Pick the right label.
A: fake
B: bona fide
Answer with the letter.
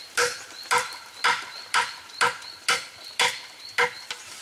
A